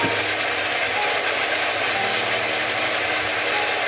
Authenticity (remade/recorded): recorded